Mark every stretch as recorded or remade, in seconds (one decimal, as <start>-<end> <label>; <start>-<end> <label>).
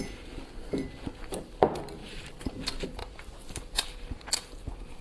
0.0-2.0 recorded; 2.0-2.6 remade; 2.6-3.0 recorded; 3.0-4.3 remade; 4.3-5.0 recorded